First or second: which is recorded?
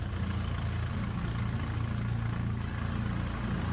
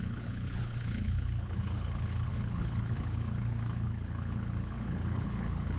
first